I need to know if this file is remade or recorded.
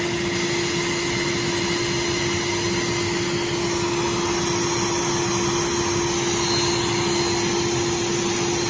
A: recorded